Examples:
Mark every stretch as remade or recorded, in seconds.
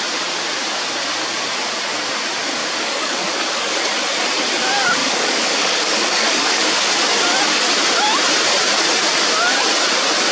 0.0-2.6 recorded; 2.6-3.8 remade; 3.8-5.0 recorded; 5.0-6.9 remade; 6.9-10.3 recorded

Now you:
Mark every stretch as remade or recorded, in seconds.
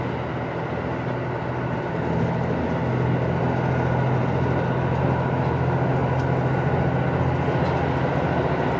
0.0-8.8 recorded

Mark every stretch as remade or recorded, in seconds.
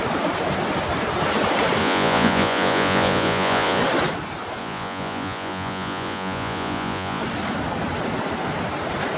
0.0-1.8 recorded; 1.8-3.8 remade; 3.8-4.6 recorded; 4.6-7.2 remade; 7.2-9.2 recorded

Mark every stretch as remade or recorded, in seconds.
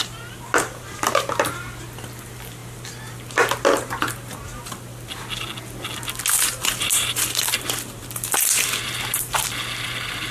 0.0-10.3 recorded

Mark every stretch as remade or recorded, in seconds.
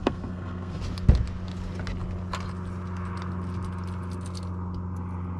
0.0-0.8 remade; 0.8-5.4 recorded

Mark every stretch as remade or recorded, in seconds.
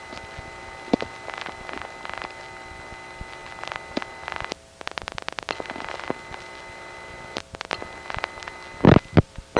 0.0-9.6 recorded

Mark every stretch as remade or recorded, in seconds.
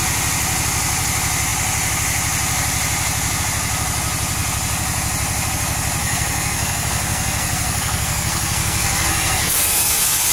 0.0-6.0 recorded; 6.0-10.3 remade